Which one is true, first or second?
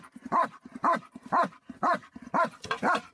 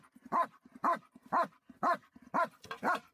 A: second